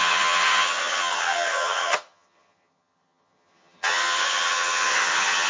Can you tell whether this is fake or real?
fake